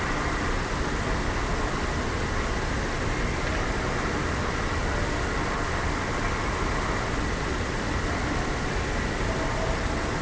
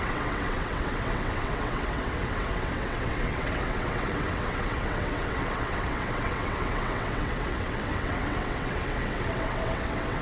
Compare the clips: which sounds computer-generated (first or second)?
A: second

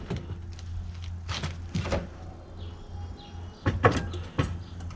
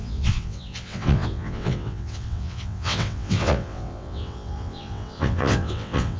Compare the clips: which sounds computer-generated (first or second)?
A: second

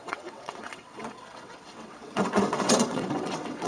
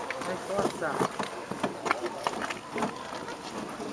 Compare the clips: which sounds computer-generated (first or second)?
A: first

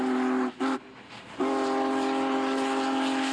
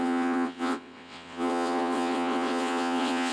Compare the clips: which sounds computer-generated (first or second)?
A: second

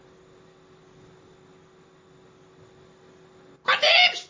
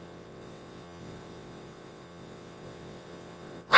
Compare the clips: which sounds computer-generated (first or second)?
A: second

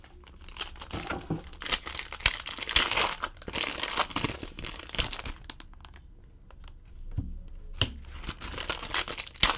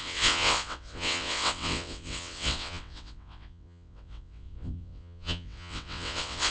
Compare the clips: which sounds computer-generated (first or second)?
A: second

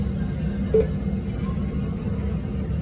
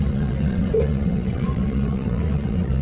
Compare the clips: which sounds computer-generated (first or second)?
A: second